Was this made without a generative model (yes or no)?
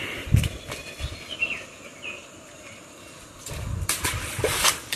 no